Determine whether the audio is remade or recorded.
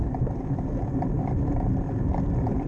remade